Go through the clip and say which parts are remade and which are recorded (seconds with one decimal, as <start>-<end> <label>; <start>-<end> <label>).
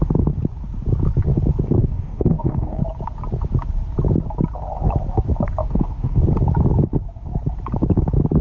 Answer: 0.0-1.8 recorded; 1.8-2.8 remade; 2.8-5.6 recorded; 5.6-6.2 remade; 6.2-8.4 recorded